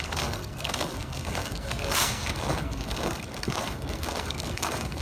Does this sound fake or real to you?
fake